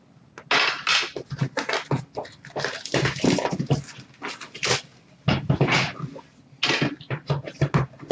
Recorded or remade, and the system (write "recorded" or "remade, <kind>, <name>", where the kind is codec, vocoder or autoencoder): recorded